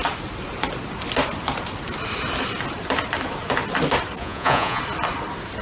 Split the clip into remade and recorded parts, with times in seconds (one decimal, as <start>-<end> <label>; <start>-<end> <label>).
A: 0.0-4.2 recorded; 4.2-4.8 remade; 4.8-5.6 recorded